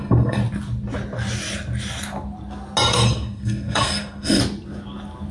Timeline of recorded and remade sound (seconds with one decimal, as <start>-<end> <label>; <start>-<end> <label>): 0.0-0.4 remade; 0.4-2.9 recorded; 2.9-4.4 remade; 4.4-5.3 recorded

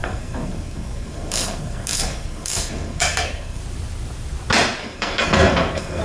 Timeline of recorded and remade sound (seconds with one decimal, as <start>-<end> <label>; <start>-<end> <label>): 0.0-3.6 remade; 3.6-4.8 recorded; 4.8-6.0 remade